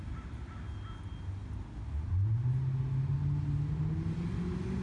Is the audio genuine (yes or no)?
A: yes